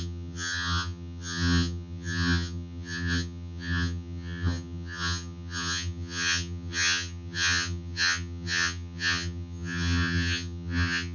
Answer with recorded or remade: remade